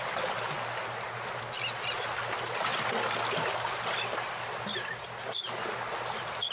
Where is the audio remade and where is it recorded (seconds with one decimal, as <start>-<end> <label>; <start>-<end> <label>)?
0.0-6.5 recorded